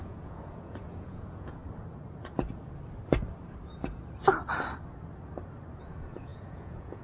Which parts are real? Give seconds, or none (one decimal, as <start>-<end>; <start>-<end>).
1.6-5.8